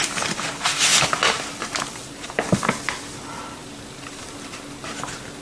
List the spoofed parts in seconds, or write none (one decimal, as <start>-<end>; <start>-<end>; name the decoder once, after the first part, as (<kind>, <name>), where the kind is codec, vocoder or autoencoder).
none